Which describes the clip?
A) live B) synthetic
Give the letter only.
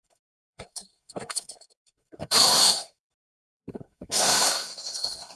B